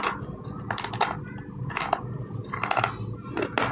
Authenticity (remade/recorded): recorded